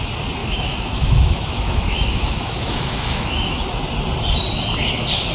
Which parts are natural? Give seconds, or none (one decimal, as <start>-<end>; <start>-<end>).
0.0-0.4; 3.6-5.3